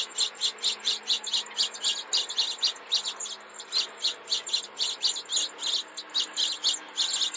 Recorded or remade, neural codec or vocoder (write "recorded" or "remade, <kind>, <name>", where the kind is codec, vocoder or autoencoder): recorded